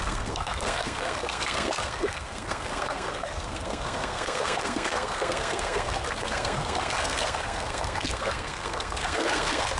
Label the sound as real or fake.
fake